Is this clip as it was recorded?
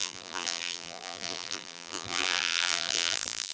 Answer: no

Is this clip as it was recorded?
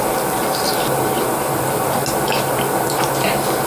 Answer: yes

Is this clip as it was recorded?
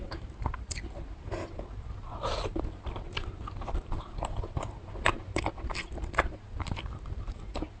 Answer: no